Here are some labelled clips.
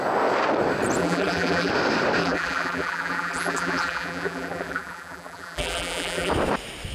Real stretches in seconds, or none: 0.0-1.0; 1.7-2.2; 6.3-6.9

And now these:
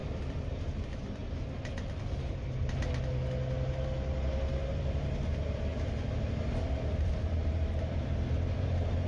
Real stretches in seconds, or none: 0.0-0.5; 1.2-4.7; 5.7-6.5; 7.4-8.3

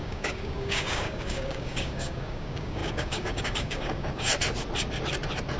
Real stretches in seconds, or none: 4.3-5.6

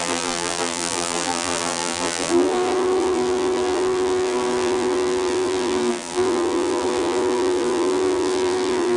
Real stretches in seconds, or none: none

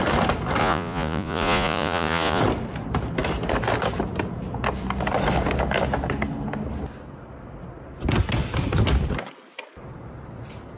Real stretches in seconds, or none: 0.0-0.6; 2.4-10.8

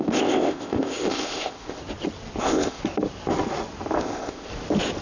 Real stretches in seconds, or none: 1.8-2.4; 2.8-4.0; 4.5-5.0